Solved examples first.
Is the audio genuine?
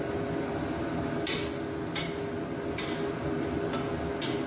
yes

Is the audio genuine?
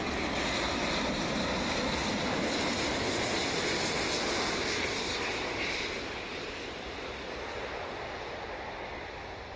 yes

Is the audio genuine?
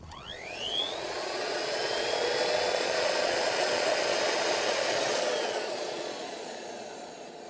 no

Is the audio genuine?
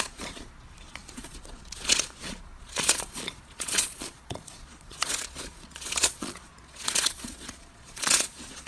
no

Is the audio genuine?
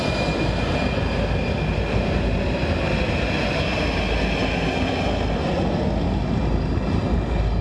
yes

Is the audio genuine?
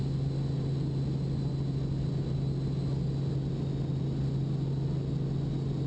yes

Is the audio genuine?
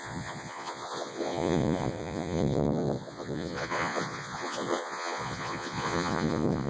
no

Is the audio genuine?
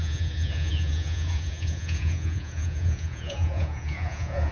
no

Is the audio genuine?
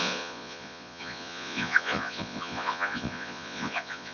no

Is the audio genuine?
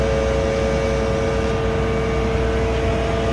yes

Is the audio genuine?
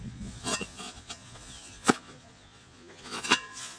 no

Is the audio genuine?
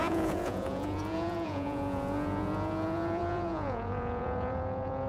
no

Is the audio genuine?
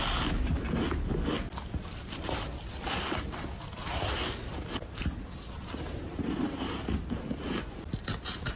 yes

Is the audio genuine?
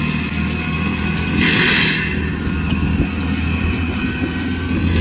yes